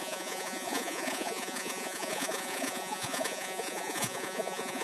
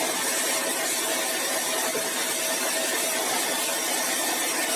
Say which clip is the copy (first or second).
first